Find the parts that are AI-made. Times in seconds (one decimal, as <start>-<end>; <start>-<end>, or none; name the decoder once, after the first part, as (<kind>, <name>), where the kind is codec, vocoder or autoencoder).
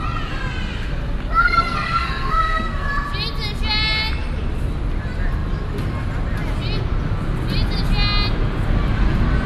1.4-2.9 (codec, SNAC)